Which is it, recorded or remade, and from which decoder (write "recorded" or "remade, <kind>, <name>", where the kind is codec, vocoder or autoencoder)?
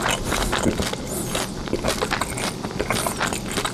recorded